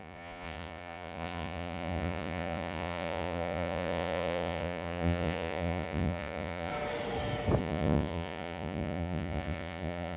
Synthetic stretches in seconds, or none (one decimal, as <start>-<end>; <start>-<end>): 0.0-6.7; 7.6-10.2